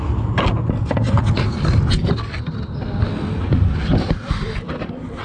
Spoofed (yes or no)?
no